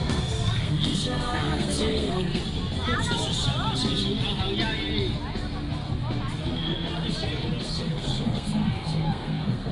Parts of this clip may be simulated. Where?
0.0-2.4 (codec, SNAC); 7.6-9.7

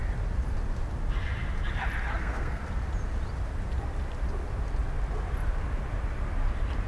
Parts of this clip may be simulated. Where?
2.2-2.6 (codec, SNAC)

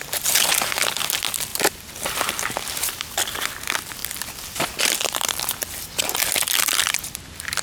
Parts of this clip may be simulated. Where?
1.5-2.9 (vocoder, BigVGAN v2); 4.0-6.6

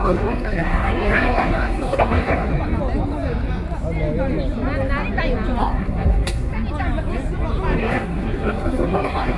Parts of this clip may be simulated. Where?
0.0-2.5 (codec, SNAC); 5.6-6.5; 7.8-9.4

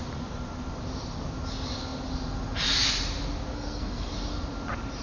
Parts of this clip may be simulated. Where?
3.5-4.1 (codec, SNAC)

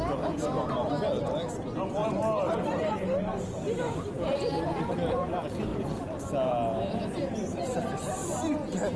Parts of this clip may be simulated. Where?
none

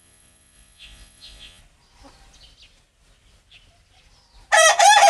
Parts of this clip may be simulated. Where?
0.0-1.6 (vocoder, Vocos)